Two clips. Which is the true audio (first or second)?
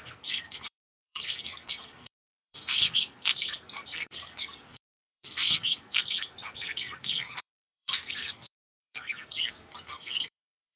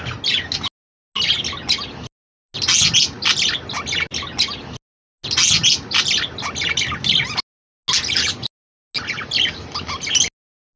second